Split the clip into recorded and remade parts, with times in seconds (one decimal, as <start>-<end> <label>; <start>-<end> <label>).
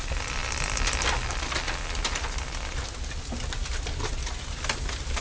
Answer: 0.0-5.2 recorded